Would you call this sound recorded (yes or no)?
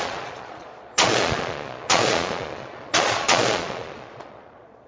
no